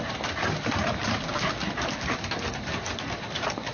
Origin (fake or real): real